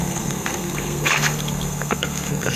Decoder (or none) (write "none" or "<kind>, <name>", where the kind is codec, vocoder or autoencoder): codec, SNAC